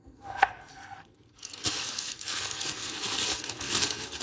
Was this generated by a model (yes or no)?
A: yes